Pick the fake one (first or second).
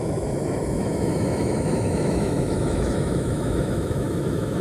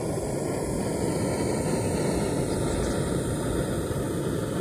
first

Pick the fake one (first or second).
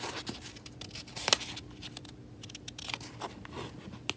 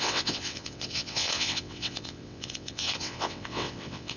second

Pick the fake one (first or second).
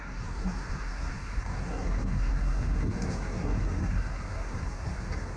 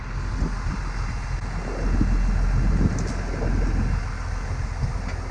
first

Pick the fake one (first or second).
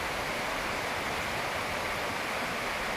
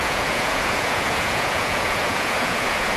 second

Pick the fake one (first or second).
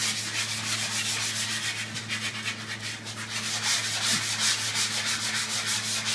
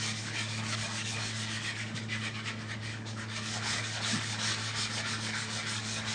second